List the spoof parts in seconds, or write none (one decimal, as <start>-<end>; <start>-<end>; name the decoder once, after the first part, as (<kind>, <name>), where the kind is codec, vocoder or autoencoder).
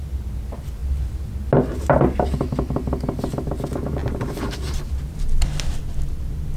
none